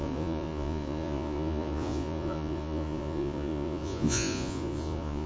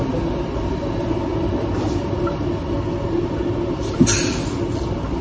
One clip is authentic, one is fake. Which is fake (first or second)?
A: first